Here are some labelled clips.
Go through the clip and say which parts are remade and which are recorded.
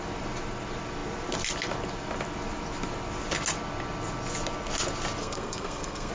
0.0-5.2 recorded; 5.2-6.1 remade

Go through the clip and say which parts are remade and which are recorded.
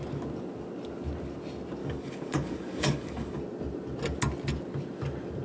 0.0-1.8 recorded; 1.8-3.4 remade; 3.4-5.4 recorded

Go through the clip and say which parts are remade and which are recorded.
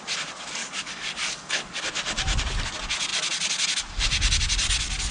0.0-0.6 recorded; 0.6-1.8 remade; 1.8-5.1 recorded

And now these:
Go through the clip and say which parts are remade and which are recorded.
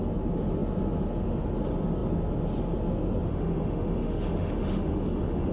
0.0-3.3 recorded; 3.3-5.5 remade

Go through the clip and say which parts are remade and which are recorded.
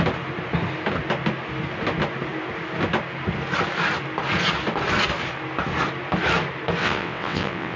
0.0-6.8 recorded; 6.8-7.8 remade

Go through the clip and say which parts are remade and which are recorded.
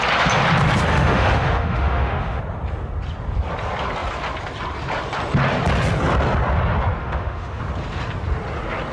0.0-0.9 recorded; 0.9-2.4 remade; 2.4-7.0 recorded; 7.0-7.6 remade; 7.6-8.9 recorded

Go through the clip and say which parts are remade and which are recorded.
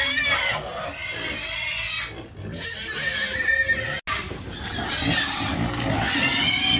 0.0-6.8 recorded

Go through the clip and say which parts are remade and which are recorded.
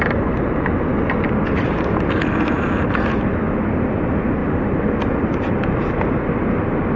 0.0-7.0 recorded